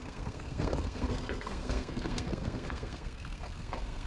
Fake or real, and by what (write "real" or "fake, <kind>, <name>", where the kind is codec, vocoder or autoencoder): fake, codec, SNAC